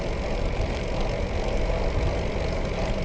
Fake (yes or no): no